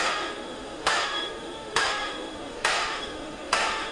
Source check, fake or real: fake